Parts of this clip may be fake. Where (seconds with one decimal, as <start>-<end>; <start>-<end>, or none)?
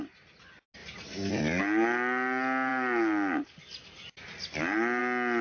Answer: none